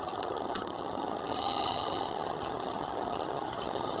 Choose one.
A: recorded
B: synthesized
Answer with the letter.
B